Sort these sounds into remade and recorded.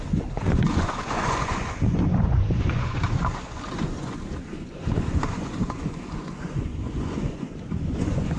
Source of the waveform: remade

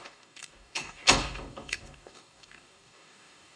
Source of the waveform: remade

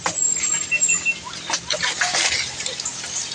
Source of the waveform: recorded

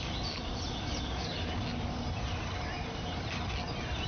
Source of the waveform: recorded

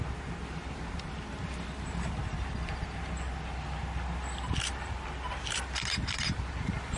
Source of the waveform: recorded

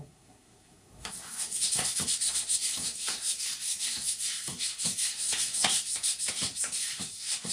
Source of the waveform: remade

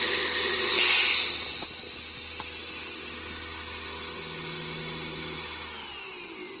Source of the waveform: recorded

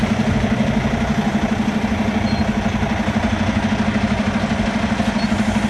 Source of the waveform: recorded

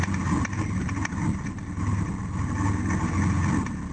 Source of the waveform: recorded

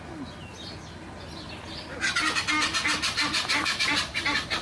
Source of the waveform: recorded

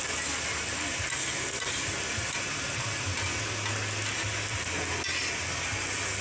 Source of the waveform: recorded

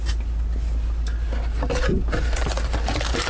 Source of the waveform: recorded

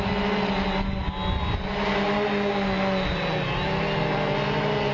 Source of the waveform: recorded